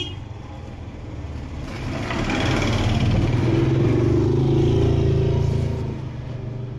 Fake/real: real